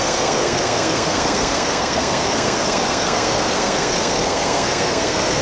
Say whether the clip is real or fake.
fake